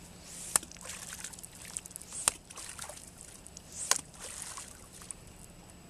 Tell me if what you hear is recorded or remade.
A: recorded